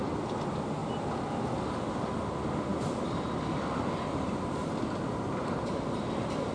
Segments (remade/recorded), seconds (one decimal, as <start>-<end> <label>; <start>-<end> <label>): 0.0-6.5 recorded